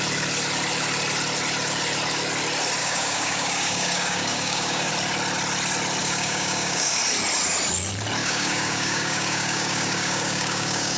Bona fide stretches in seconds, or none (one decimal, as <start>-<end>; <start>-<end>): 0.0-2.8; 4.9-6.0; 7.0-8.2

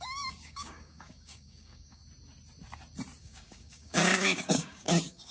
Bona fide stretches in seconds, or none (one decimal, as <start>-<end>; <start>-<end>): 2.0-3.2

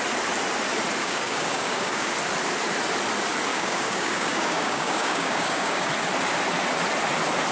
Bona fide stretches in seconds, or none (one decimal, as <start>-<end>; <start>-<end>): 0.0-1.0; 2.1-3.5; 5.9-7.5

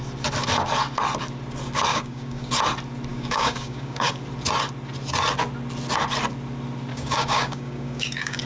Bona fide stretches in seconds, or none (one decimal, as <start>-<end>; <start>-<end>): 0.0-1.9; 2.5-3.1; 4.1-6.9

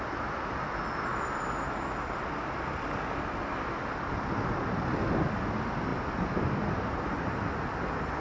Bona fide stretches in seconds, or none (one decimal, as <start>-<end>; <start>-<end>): 0.0-8.2

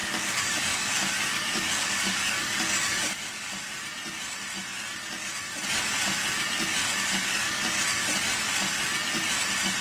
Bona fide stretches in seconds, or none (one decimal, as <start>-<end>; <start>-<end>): 3.5-6.8; 7.6-9.8

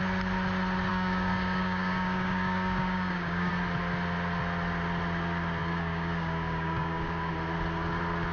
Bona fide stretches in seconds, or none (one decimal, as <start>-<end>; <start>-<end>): 0.0-0.9; 3.5-5.6; 7.3-8.3